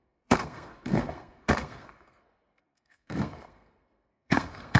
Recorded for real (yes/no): no